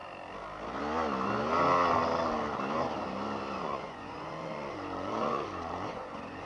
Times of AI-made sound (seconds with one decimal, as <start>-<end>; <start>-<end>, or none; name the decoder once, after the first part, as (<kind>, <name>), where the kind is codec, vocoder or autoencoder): 3.6-6.5 (vocoder, Vocos)